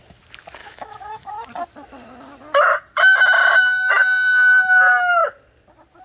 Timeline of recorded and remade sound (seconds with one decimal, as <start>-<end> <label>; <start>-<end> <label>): 0.0-0.6 recorded; 0.6-1.3 remade; 1.3-6.0 recorded

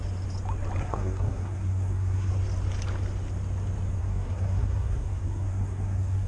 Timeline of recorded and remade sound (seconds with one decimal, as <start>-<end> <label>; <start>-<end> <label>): 0.0-0.8 recorded; 0.8-2.3 remade; 2.3-4.0 recorded; 4.0-6.3 remade

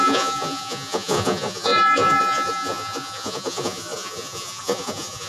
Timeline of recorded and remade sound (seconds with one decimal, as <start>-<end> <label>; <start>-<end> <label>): 0.0-5.3 remade

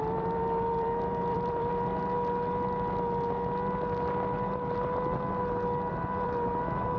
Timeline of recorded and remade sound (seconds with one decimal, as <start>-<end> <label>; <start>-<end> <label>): 0.0-1.7 remade; 1.7-5.9 recorded; 5.9-7.0 remade

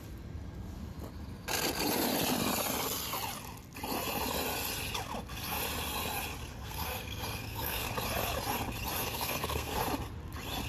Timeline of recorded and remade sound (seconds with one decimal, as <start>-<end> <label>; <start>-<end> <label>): 0.0-6.6 recorded; 6.6-7.9 remade; 7.9-9.0 recorded; 9.0-9.8 remade; 9.8-10.7 recorded

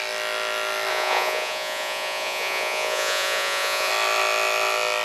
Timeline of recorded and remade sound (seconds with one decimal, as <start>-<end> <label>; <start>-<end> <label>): 0.0-0.9 recorded; 0.9-3.9 remade; 3.9-5.0 recorded